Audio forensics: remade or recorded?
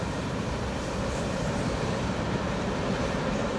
remade